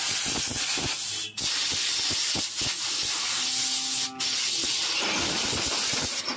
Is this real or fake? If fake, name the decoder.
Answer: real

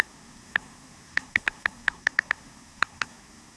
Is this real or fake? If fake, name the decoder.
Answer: fake, codec, SNAC